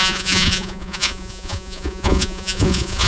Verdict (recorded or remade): remade